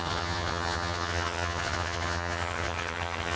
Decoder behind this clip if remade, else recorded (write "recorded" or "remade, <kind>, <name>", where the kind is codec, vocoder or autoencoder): remade, vocoder, HiFi-GAN